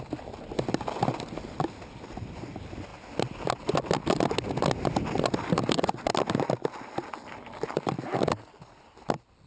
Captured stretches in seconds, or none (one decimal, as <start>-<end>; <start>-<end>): 0.0-9.5